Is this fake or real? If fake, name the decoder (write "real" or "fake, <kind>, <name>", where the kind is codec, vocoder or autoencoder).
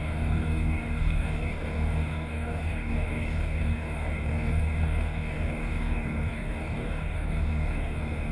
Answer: fake, codec, DAC